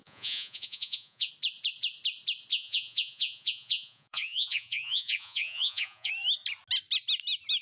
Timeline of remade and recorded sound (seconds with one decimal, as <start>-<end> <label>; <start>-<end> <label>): 0.0-1.3 remade; 1.3-2.5 recorded; 2.5-6.1 remade; 6.1-7.6 recorded